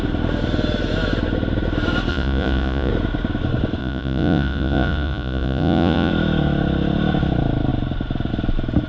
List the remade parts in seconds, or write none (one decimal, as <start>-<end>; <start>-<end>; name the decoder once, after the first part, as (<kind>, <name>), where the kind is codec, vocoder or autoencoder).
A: 2.1-2.9 (vocoder, Vocos); 3.8-6.1